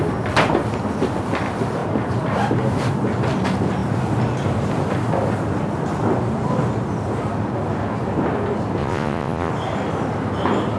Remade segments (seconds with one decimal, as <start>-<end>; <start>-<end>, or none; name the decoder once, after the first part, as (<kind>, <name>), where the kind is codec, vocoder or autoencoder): 8.8-9.5 (vocoder, Vocos)